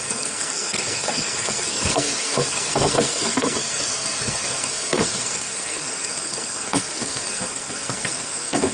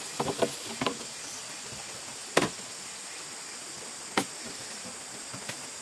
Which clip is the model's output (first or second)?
first